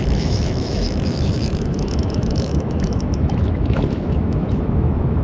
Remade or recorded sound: remade